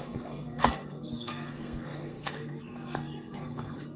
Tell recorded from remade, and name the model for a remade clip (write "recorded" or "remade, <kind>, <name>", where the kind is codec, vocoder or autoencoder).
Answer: remade, codec, SNAC